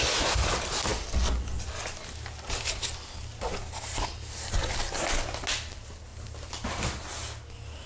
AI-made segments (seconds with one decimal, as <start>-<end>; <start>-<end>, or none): none